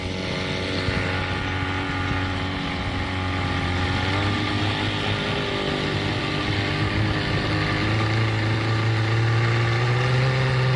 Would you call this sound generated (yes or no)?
no